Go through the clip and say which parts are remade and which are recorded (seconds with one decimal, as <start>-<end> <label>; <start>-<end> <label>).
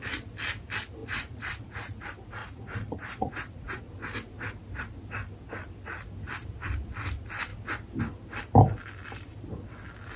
0.0-1.0 recorded; 1.0-2.0 remade; 2.0-2.4 recorded; 2.4-3.8 remade; 3.8-10.2 recorded